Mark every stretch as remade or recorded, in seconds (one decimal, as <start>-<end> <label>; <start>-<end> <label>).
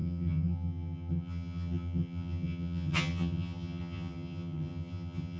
0.0-5.4 remade